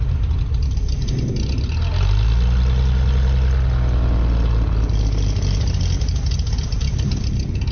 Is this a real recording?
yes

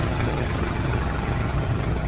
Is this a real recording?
no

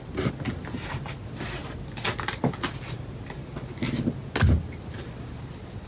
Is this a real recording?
yes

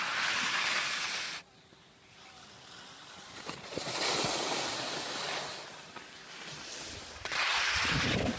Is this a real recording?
yes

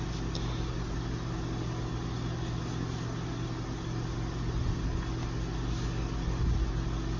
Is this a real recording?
yes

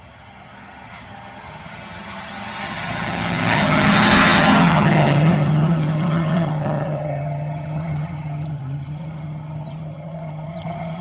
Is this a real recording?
no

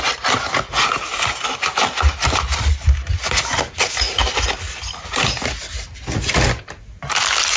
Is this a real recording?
yes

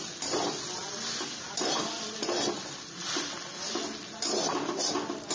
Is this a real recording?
yes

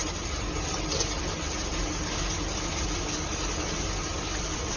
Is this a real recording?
yes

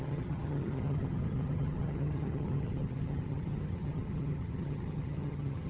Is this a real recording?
no